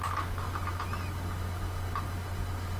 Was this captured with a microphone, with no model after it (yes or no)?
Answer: yes